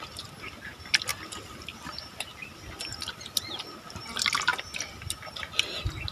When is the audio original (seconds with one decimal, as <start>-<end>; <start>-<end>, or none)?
0.0-1.1; 2.5-4.5; 5.3-6.1